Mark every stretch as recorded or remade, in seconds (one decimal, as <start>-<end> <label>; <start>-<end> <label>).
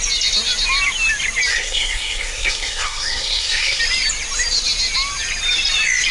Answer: 0.0-1.5 recorded; 1.5-3.8 remade; 3.8-6.1 recorded